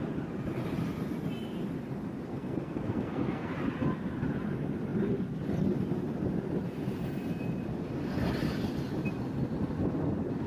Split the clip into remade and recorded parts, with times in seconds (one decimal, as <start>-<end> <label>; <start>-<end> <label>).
0.0-2.3 recorded; 2.3-3.5 remade; 3.5-10.5 recorded